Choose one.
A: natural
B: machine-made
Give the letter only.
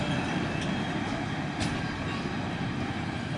A